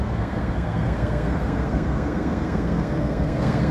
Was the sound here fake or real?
fake